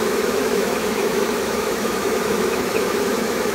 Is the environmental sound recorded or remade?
remade